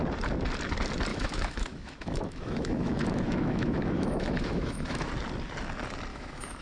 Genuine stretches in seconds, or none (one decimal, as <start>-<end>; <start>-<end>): 0.0-1.1; 5.1-6.1